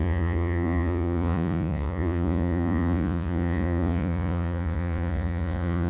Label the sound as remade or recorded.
remade